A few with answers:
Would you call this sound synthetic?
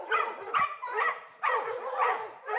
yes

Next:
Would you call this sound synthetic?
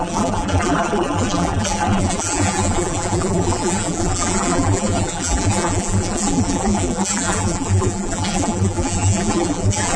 yes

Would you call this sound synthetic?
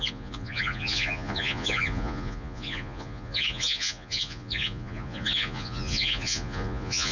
yes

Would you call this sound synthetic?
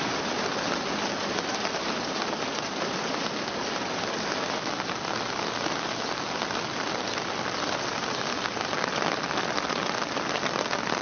no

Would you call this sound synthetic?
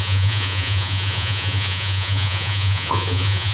yes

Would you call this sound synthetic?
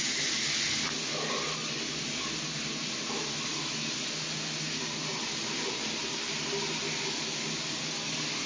no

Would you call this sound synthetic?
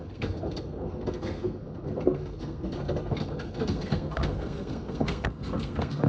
yes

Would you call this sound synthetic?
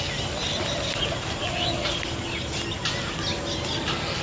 no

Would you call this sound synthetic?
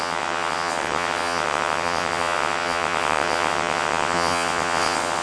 yes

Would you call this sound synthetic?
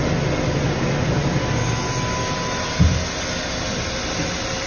no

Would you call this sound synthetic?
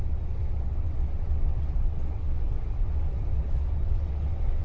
yes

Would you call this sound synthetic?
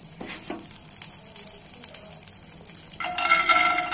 no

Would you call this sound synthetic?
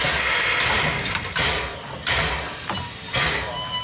no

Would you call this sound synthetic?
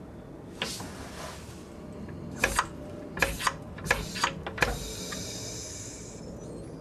no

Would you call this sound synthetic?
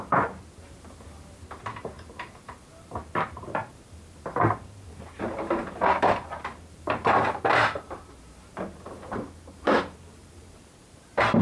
yes